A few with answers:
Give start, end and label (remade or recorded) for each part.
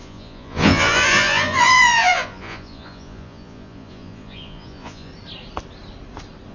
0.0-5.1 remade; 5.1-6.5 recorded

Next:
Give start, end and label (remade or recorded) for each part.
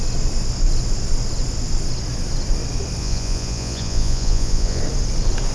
0.0-3.0 recorded; 3.0-4.8 remade; 4.8-5.5 recorded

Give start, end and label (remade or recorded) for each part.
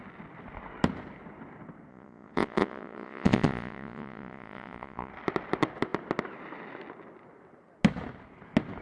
0.0-1.9 recorded; 1.9-5.1 remade; 5.1-8.8 recorded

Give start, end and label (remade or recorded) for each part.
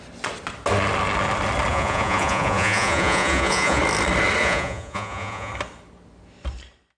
0.0-1.7 recorded; 1.7-3.8 remade; 3.8-4.4 recorded; 4.4-5.5 remade; 5.5-7.0 recorded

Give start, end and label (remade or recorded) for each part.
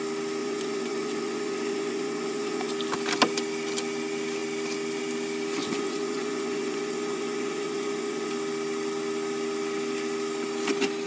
0.0-0.4 recorded; 0.4-2.7 remade; 2.7-5.6 recorded; 5.6-8.3 remade; 8.3-11.1 recorded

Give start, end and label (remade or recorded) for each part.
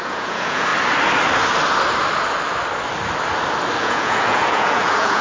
0.0-0.7 remade; 0.7-3.8 recorded; 3.8-5.2 remade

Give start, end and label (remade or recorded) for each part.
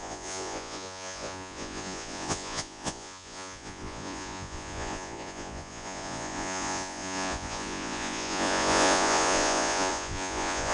0.0-10.7 remade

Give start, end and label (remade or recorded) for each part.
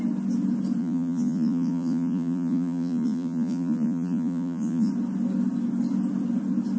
0.0-0.8 recorded; 0.8-4.9 remade; 4.9-6.8 recorded